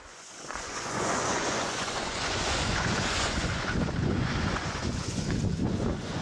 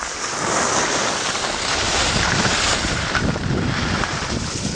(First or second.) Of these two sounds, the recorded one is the second